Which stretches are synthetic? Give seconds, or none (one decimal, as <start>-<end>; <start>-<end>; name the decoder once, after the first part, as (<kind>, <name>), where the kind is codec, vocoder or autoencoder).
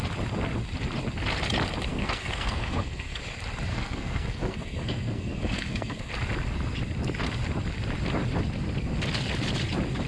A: 1.9-3.2 (codec, SNAC); 3.7-6.1